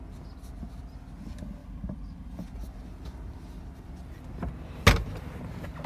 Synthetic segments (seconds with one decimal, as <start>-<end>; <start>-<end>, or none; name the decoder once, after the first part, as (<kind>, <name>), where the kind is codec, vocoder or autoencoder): 1.6-3.9 (vocoder, BigVGAN v2)